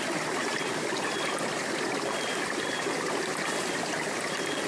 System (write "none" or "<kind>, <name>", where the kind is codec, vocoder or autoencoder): none